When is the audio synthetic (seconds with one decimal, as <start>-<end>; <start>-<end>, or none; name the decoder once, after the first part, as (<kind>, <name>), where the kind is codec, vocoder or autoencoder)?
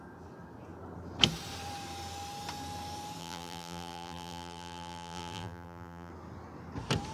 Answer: 3.2-6.1 (vocoder, BigVGAN v2)